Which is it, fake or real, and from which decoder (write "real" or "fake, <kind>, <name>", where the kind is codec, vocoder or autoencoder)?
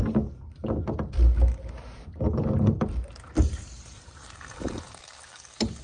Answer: real